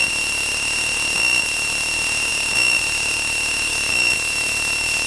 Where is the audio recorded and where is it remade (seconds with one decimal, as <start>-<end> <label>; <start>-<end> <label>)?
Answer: 0.0-3.7 recorded; 3.7-5.1 remade